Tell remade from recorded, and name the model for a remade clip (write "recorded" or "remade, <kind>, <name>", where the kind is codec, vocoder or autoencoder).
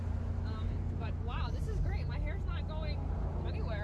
recorded